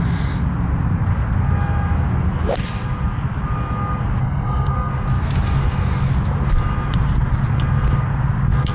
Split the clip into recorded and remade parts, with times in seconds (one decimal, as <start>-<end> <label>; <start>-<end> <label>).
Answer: 0.0-4.2 recorded; 4.2-4.9 remade; 4.9-8.7 recorded